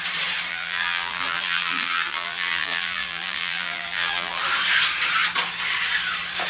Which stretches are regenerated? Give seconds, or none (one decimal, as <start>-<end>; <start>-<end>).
0.5-4.4